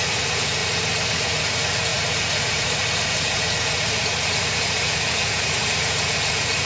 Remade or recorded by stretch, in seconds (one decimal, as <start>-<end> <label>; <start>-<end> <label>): 0.0-0.6 remade; 0.6-1.1 recorded; 1.1-6.7 remade